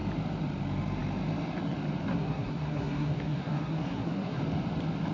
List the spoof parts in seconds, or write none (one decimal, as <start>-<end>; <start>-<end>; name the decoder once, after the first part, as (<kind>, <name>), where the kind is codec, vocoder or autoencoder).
2.1-4.4 (codec, SNAC)